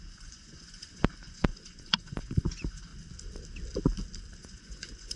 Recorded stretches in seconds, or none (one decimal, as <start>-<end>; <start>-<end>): 2.9-4.4